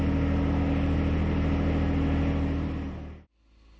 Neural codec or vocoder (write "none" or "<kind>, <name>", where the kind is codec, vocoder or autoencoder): none